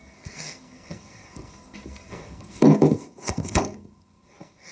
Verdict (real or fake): fake